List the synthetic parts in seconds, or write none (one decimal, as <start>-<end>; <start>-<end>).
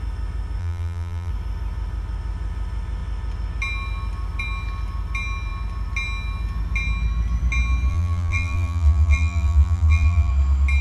0.6-1.3; 7.9-10.3